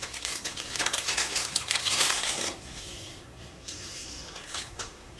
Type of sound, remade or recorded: remade